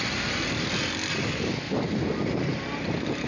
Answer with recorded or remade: recorded